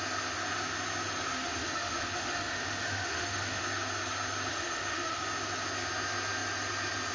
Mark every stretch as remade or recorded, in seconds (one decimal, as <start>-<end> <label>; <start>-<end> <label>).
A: 0.0-1.2 recorded; 1.2-3.6 remade; 3.6-4.5 recorded; 4.5-5.2 remade; 5.2-7.1 recorded